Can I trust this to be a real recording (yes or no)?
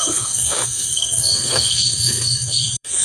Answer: no